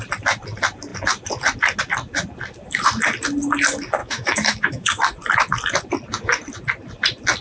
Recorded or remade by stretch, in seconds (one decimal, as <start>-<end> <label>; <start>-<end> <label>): 0.0-4.0 recorded; 4.0-5.0 remade; 5.0-7.4 recorded